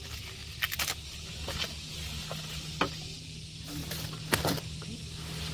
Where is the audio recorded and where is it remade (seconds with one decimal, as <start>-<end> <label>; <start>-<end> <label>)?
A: 0.0-5.5 recorded